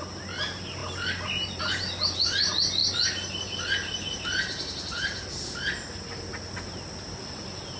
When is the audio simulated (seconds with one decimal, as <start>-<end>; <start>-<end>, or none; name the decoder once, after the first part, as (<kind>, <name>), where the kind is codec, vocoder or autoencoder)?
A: none

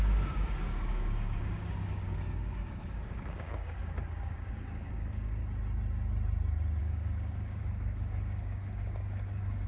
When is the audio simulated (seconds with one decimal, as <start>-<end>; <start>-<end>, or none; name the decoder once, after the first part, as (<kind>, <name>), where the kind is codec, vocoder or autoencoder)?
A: 0.0-5.4 (codec, DAC); 6.8-9.7

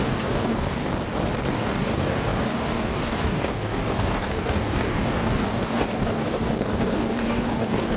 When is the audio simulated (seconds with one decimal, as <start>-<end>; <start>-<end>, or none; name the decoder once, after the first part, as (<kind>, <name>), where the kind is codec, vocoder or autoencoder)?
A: 0.0-0.9 (codec, DAC); 1.5-8.0

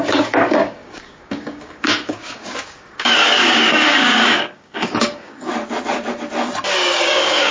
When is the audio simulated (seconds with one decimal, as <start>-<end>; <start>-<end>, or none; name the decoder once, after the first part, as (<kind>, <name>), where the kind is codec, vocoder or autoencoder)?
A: 0.0-5.5 (codec, DAC); 6.7-7.5

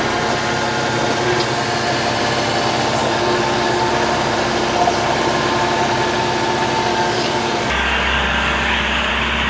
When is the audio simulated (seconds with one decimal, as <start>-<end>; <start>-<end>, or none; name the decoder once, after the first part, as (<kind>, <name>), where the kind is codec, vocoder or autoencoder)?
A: 3.0-3.9 (codec, DAC); 6.9-9.1